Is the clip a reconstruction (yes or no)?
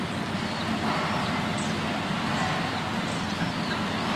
no